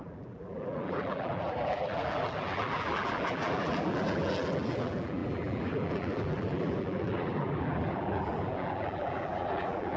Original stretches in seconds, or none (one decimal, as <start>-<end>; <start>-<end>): none